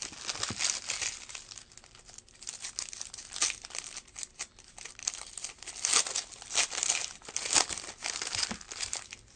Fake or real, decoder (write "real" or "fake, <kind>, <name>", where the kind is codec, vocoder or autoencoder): real